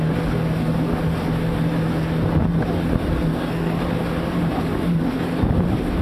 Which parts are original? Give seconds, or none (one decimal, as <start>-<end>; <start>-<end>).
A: 0.0-3.3; 3.8-6.0